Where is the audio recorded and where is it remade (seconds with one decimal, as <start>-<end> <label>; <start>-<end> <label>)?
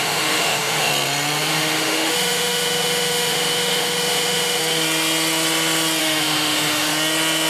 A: 0.0-0.9 remade; 0.9-1.5 recorded; 1.5-4.6 remade; 4.6-6.0 recorded; 6.0-6.9 remade; 6.9-7.5 recorded